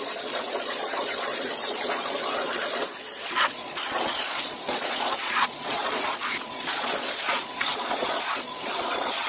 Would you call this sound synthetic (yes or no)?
yes